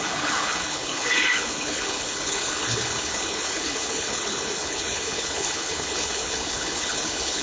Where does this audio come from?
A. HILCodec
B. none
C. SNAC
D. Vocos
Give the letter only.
A